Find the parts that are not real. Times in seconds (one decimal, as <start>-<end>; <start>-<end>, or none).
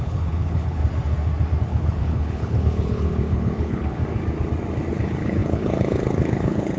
0.0-0.8; 1.6-4.0; 4.9-6.8